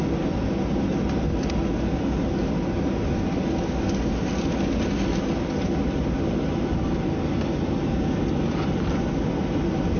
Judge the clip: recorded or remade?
recorded